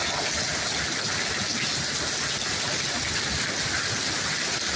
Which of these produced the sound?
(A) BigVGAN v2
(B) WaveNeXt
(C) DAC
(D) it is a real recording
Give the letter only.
D